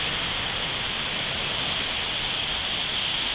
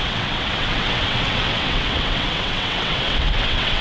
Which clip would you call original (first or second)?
first